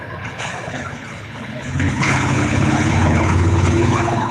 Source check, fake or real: fake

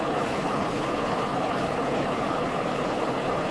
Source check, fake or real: fake